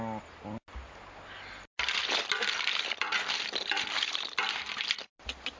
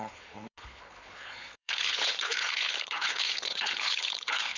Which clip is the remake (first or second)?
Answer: second